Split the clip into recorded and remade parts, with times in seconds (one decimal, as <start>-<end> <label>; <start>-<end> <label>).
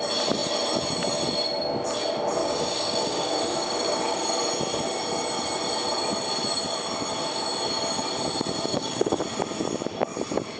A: 0.0-2.4 recorded; 2.4-4.2 remade; 4.2-8.7 recorded; 8.7-9.2 remade; 9.2-10.6 recorded